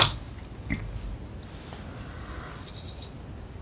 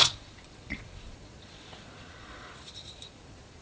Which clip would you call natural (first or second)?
first